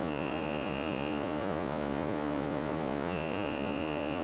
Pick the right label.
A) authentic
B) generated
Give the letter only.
B